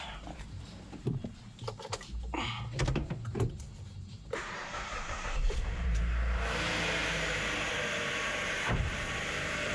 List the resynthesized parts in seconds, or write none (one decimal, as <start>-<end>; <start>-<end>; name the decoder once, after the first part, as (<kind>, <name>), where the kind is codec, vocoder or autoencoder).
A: 0.0-1.3 (vocoder, BigVGAN v2); 4.1-6.1; 7.7-9.7